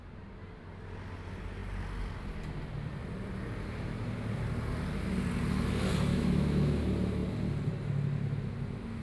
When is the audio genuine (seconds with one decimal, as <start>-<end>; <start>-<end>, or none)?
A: 0.0-6.1; 6.8-9.0